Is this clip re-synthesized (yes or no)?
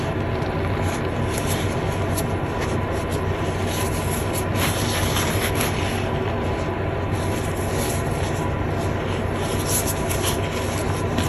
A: no